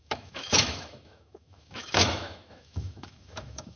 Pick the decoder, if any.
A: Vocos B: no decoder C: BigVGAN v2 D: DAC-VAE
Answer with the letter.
D